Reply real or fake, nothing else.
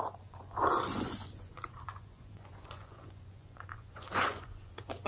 fake